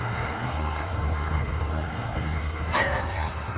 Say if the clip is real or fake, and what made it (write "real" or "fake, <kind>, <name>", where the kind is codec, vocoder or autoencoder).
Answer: fake, codec, SNAC